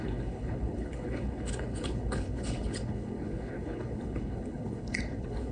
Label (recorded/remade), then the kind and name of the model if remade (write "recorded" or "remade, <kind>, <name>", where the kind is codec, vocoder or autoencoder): remade, codec, HILCodec